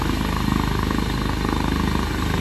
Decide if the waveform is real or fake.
real